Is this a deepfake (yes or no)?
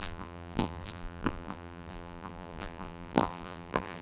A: yes